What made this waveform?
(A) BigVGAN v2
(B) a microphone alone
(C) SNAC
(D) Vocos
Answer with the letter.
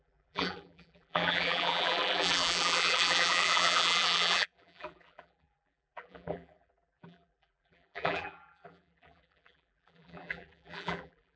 A